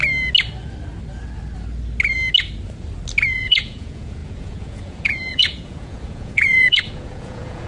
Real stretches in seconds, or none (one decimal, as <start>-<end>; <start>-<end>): 0.0-3.3